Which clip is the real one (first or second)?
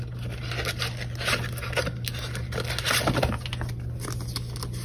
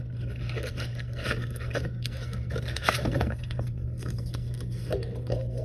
first